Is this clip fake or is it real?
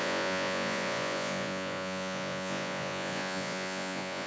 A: fake